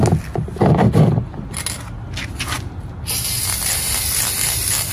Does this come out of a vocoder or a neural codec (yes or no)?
no